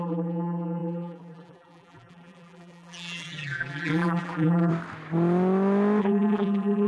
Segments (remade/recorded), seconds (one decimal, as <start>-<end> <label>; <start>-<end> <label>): 0.0-4.7 remade; 4.7-6.0 recorded; 6.0-6.9 remade